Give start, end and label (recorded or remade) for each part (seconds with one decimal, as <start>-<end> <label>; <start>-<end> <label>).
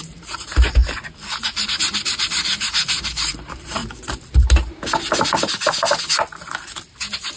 0.0-0.8 remade; 0.8-1.8 recorded; 1.8-3.8 remade; 3.8-6.9 recorded; 6.9-7.4 remade